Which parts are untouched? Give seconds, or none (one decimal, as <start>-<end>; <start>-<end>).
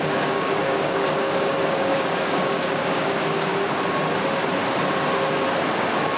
3.5-6.2